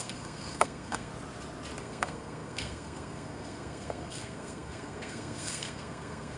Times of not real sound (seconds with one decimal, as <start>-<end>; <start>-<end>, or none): 0.0-1.1; 1.8-6.4